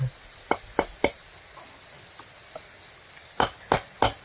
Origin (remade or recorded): recorded